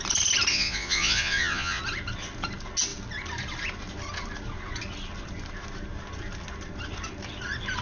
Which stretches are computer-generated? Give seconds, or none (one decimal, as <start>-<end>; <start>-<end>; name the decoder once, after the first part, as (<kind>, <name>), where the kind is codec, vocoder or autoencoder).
0.5-1.8 (vocoder, Vocos)